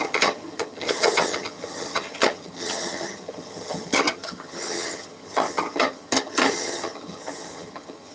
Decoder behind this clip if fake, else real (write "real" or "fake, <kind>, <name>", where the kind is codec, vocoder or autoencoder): fake, vocoder, HiFi-GAN